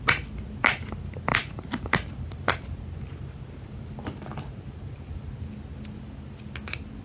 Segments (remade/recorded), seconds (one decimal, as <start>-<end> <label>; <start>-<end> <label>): 0.0-1.3 recorded; 1.3-5.3 remade; 5.3-7.0 recorded